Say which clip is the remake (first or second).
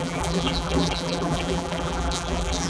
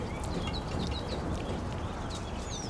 first